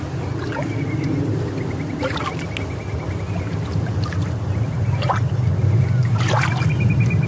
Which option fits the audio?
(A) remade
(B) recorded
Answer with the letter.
B